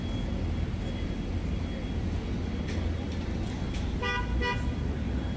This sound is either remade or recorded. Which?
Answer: recorded